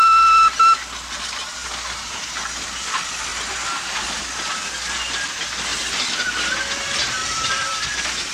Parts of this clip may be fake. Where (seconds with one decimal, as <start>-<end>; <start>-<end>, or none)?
3.3-4.2; 5.7-6.2; 7.2-7.8